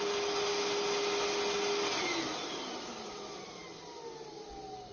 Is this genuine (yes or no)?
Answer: yes